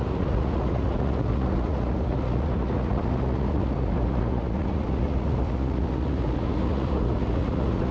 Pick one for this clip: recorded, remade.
remade